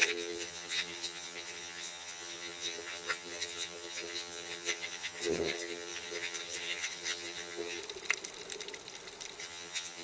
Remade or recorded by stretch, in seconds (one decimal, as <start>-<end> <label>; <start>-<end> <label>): 0.0-7.8 remade; 7.8-9.4 recorded; 9.4-10.0 remade